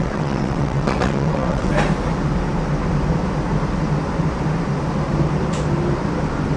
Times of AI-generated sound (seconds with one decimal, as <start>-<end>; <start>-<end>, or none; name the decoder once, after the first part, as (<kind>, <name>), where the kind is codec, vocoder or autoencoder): 0.0-1.7 (vocoder, WaveNeXt)